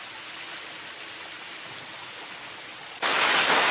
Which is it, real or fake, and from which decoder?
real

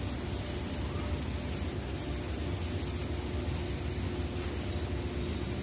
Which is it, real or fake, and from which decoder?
real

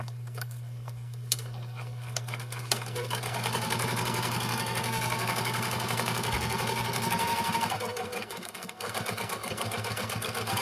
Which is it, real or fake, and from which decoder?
fake, codec, SNAC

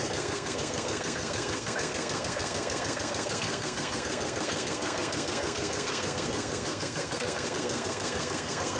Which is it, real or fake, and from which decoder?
fake, codec, SNAC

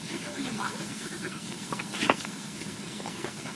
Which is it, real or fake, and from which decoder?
fake, codec, SNAC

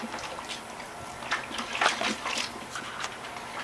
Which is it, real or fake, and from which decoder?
real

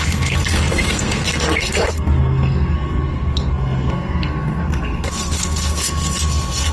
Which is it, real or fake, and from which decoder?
fake, codec, SNAC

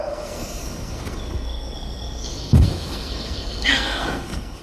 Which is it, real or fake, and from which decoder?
fake, codec, SNAC